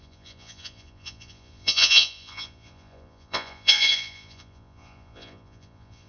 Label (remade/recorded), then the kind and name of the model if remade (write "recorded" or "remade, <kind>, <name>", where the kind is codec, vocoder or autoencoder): remade, vocoder, Vocos